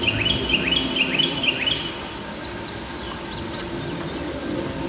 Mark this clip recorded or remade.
recorded